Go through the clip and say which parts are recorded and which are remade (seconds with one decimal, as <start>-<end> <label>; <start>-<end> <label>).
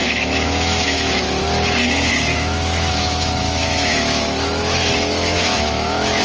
0.0-1.4 remade; 1.4-2.3 recorded; 2.3-6.2 remade